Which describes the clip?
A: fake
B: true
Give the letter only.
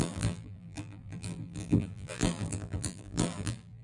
A